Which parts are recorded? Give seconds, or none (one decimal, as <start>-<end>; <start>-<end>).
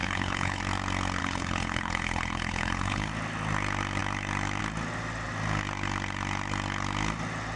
0.6-1.2; 3.1-7.6